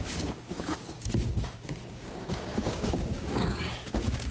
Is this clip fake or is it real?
fake